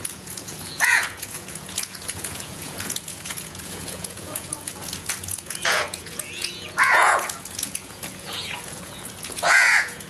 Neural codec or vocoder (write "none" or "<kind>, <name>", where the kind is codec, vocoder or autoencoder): vocoder, Vocos